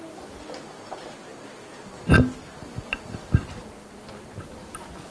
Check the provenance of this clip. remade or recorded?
recorded